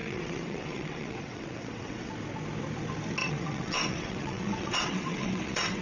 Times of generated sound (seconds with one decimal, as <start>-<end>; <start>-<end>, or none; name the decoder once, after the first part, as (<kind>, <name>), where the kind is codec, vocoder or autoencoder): 0.0-2.1 (vocoder, WaveNeXt); 3.2-5.8